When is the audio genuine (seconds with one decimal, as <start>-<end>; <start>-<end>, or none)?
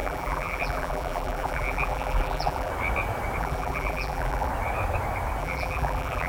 2.7-3.4; 4.5-5.4